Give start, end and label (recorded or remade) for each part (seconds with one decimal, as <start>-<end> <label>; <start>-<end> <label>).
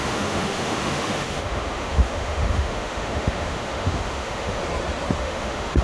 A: 0.0-4.6 remade; 4.6-5.2 recorded; 5.2-5.8 remade